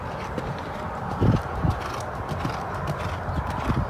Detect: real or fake real